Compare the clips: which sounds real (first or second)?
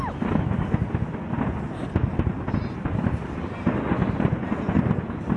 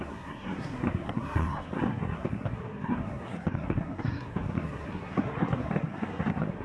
first